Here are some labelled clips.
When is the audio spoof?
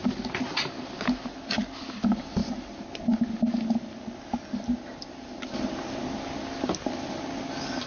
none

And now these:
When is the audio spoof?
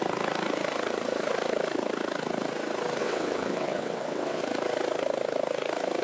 3.0-4.4 (vocoder, WaveNeXt)